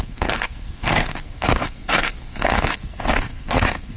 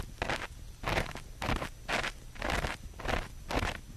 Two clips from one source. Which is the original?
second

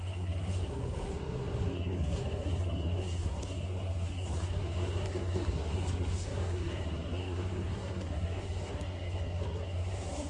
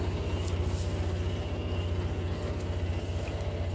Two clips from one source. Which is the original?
second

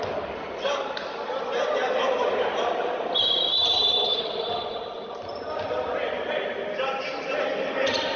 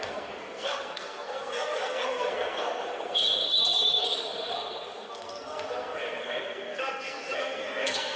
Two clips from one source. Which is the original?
first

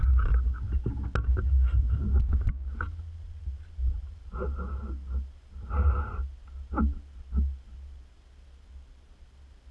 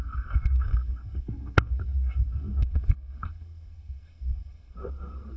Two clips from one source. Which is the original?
first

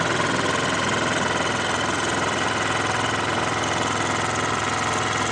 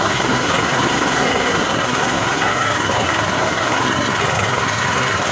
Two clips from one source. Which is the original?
first